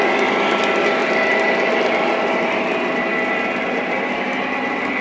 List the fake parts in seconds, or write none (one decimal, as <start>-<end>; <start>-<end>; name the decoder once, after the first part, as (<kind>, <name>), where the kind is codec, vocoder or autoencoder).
1.0-2.4 (vocoder, BigVGAN v2)